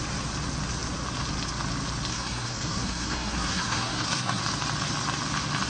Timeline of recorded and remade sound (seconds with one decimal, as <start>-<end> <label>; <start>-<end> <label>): 0.0-2.1 recorded; 2.1-4.4 remade; 4.4-5.7 recorded